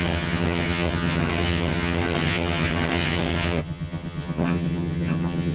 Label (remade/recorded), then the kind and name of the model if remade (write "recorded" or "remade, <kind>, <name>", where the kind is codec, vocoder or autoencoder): remade, vocoder, HiFi-GAN